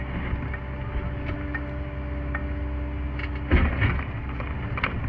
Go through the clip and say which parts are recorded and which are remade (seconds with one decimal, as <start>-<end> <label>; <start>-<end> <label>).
0.0-5.1 recorded